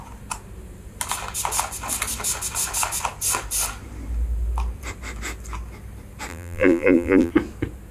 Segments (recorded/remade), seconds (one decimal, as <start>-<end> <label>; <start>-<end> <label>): 0.0-6.3 recorded; 6.3-7.3 remade; 7.3-7.9 recorded